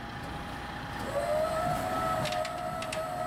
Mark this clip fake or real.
real